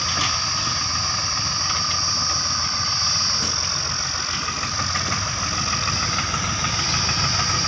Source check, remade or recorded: recorded